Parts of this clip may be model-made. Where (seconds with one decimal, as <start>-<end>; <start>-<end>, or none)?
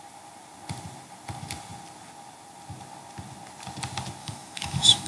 4.2-5.1